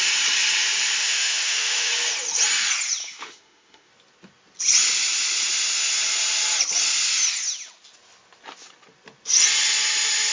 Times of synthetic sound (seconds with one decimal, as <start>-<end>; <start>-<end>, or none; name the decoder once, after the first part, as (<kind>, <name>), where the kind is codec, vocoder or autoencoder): 1.0-1.9 (autoencoder, DAC-VAE); 3.0-3.9